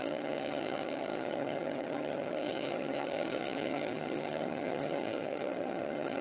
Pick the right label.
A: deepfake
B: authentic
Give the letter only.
A